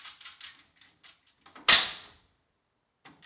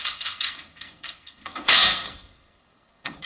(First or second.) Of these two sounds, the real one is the first